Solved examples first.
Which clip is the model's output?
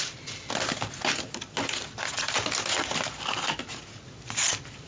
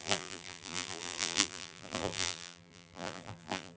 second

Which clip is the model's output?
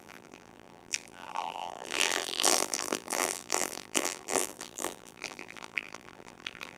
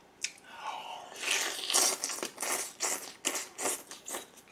first